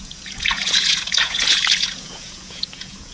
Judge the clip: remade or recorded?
remade